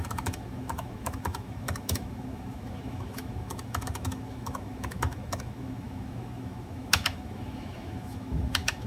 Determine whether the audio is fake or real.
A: fake